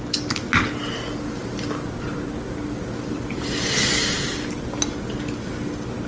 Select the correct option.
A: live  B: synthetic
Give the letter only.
A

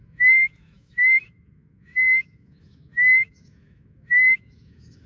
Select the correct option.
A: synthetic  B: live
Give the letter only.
A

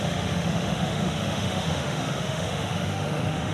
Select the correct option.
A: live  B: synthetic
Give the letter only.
B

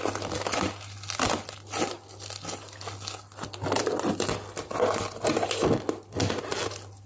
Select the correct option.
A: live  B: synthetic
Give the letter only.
A